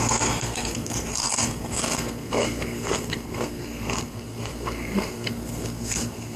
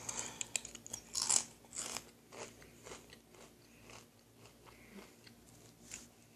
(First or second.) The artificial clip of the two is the first